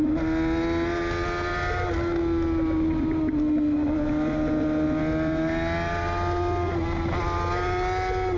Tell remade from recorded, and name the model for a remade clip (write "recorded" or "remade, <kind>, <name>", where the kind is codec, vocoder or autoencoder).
recorded